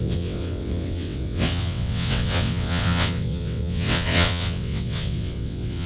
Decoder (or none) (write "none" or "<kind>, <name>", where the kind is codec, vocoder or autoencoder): vocoder, WaveNeXt